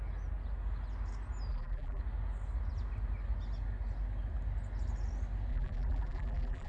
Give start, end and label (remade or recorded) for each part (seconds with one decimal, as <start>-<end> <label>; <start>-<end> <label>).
0.0-1.5 recorded; 1.5-2.0 remade; 2.0-5.5 recorded; 5.5-6.7 remade